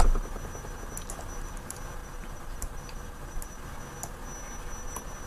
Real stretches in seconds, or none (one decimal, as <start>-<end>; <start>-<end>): 0.0-2.0; 3.6-5.3

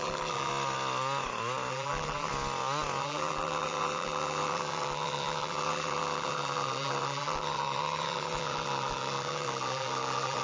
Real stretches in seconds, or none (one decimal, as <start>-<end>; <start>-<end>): 0.5-1.7; 2.3-3.0

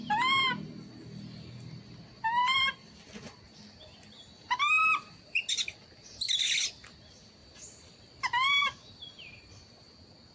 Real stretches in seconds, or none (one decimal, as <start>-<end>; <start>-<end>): 0.0-4.8; 5.4-7.4; 8.9-10.3